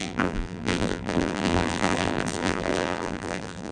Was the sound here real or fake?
fake